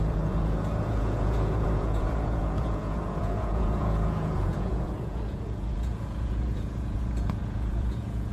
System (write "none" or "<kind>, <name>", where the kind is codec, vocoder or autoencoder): vocoder, Vocos